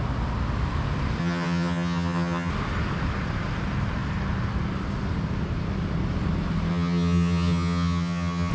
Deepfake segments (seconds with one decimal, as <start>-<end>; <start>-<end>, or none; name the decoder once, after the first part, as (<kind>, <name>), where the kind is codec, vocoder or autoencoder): 1.2-2.5 (vocoder, HiFi-GAN); 6.7-8.5